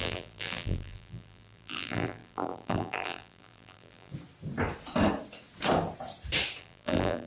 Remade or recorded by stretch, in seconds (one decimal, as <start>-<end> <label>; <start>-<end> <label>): 0.0-4.1 remade; 4.1-6.6 recorded; 6.6-7.3 remade